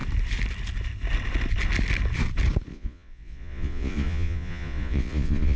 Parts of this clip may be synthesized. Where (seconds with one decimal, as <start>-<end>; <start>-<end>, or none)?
2.7-5.6